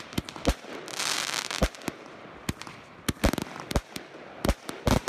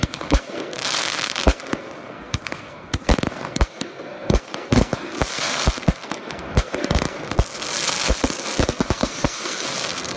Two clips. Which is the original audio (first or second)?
first